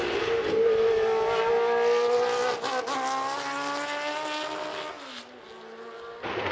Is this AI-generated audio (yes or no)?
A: no